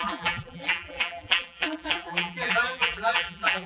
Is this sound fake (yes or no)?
yes